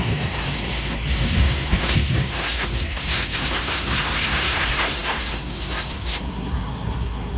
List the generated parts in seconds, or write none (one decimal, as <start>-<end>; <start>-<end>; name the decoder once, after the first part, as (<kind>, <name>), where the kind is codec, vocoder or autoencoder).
0.0-7.4 (codec, SNAC)